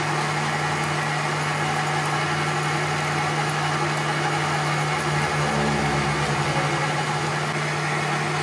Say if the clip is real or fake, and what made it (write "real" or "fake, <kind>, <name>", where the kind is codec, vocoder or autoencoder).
real